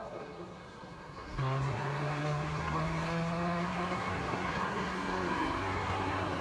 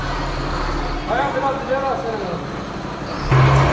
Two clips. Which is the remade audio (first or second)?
first